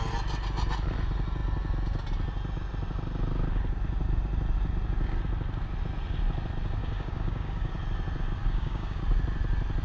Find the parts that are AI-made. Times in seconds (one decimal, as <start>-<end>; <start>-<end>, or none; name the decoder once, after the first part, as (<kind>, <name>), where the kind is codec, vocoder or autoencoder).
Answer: 6.8-7.7 (codec, DAC); 8.4-9.0